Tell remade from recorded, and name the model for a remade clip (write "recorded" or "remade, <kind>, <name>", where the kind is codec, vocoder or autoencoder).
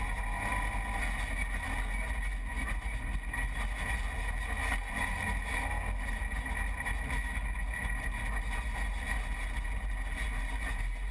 recorded